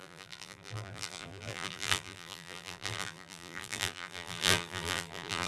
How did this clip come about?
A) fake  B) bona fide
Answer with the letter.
A